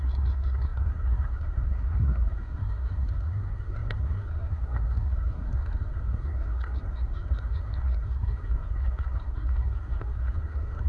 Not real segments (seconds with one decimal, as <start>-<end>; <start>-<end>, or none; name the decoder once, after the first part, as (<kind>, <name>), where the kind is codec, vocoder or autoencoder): 0.0-10.9 (codec, SNAC)

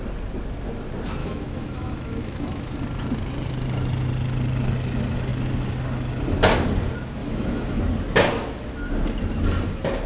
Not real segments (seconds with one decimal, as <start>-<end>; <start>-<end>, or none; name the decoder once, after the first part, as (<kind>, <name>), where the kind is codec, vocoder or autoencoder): 1.2-2.7 (autoencoder, DAC-VAE); 7.2-7.8

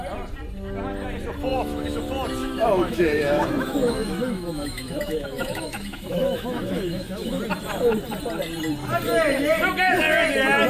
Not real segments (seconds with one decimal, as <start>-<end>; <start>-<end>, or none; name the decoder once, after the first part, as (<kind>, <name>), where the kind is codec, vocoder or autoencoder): 1.5-2.0 (autoencoder, DAC-VAE); 2.4-7.4

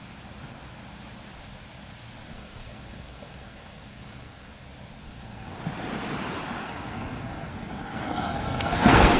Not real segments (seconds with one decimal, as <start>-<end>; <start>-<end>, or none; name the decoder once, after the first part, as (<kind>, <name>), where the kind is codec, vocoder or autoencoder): 2.3-4.5 (codec, SNAC); 5.0-5.6; 6.6-9.2

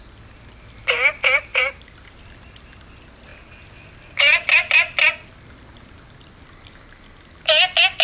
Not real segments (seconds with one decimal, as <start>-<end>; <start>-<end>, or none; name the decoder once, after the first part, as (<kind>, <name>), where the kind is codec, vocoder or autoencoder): 1.5-2.2 (vocoder, BigVGAN v2)

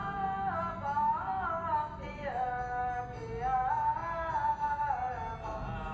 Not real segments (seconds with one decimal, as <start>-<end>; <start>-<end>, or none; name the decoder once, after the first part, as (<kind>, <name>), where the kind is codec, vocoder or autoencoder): none

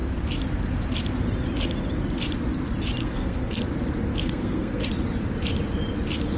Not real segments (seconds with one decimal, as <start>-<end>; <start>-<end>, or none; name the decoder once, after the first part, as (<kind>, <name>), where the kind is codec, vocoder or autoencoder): 3.0-3.6 (codec, SNAC); 4.1-4.9